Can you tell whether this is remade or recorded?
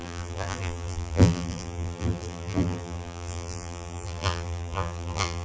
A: remade